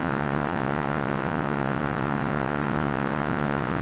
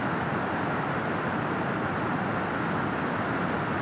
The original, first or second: second